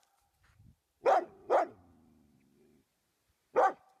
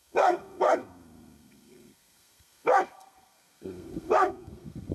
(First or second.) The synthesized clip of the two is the second